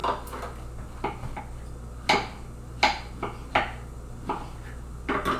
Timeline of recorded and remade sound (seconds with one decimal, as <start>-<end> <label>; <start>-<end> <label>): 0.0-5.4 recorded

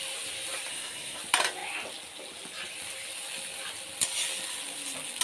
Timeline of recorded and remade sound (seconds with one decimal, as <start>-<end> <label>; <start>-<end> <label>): 0.0-0.7 recorded; 0.7-1.2 remade; 1.2-5.2 recorded

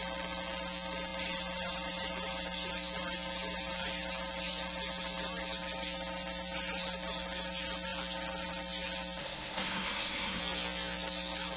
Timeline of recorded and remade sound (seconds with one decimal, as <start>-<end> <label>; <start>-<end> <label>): 0.0-9.2 recorded; 9.2-10.4 remade; 10.4-11.6 recorded

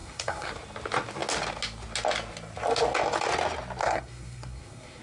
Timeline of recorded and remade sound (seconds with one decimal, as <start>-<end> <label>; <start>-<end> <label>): 0.0-0.5 remade; 0.5-3.8 recorded; 3.8-5.0 remade

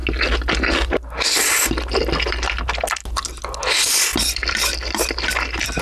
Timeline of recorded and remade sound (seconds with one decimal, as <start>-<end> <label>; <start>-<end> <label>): 0.0-5.8 recorded

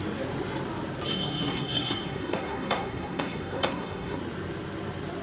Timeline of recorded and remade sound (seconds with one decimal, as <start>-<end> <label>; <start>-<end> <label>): 0.0-1.1 recorded; 1.1-4.2 remade; 4.2-5.2 recorded